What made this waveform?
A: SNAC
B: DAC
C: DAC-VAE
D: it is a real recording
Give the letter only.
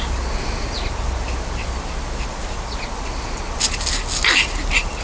D